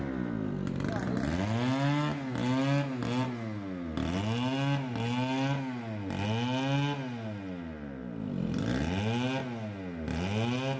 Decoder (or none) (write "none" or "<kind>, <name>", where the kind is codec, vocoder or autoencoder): none